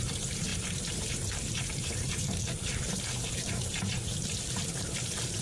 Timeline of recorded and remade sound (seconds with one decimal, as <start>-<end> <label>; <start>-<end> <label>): 0.0-5.4 remade